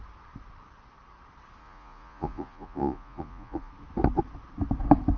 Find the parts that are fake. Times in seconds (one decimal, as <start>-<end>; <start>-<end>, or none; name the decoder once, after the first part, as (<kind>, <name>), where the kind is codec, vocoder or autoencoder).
1.6-3.7 (vocoder, Vocos)